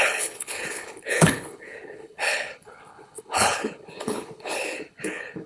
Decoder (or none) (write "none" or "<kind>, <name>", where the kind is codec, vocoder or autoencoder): codec, HILCodec